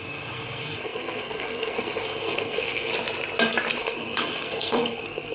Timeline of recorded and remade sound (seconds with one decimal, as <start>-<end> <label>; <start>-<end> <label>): 0.0-2.9 remade; 2.9-3.8 recorded; 3.8-5.3 remade